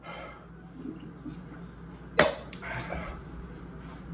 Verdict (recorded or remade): recorded